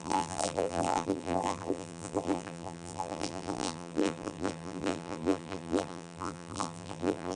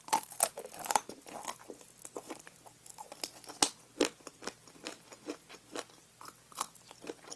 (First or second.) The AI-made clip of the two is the first